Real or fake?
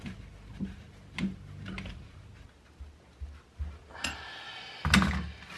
real